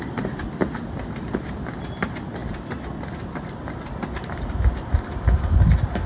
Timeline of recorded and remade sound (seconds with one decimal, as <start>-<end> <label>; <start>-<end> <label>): 0.0-6.1 recorded